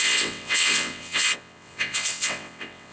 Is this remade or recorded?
remade